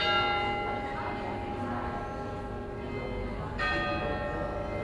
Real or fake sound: real